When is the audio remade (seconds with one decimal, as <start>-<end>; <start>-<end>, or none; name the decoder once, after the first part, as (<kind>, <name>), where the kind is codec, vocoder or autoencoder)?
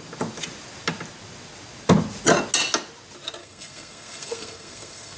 3.4-5.2 (codec, SNAC)